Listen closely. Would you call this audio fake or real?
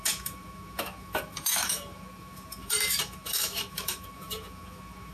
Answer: fake